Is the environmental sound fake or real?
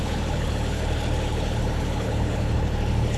fake